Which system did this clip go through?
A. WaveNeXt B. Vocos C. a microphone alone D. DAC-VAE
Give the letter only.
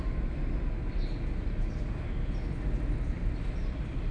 C